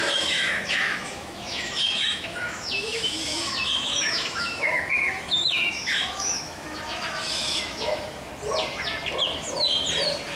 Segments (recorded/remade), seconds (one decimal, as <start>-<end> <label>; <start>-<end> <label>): 0.0-8.3 remade; 8.3-10.4 recorded